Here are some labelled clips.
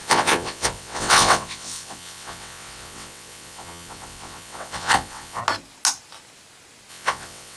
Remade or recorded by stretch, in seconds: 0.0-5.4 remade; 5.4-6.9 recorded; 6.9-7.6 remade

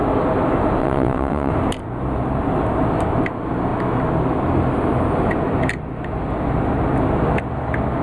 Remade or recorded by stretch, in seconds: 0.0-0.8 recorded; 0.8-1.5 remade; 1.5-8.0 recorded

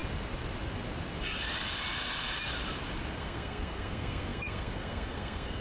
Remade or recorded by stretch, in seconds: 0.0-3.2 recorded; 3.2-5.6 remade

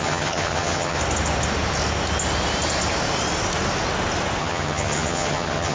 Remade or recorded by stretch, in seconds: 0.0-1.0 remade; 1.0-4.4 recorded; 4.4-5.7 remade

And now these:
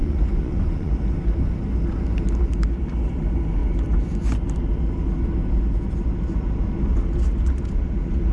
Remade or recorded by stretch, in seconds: 0.0-0.9 remade; 0.9-8.3 recorded

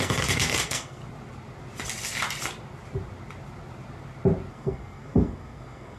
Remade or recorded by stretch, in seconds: 0.0-1.0 remade; 1.0-4.5 recorded; 4.5-6.0 remade